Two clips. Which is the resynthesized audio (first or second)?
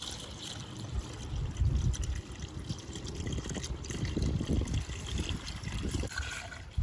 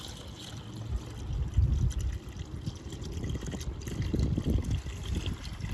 first